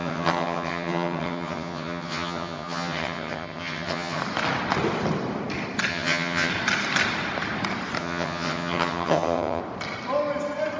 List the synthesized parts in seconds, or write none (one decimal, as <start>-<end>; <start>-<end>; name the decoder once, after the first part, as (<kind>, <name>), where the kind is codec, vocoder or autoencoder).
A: 0.0-4.2 (vocoder, HiFi-GAN); 5.9-6.5; 8.0-9.6